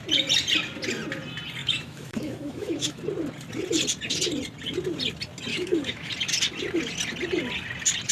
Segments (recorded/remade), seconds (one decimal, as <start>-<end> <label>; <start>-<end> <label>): 0.0-1.6 recorded; 1.6-3.0 remade; 3.0-5.5 recorded; 5.5-6.1 remade; 6.1-8.1 recorded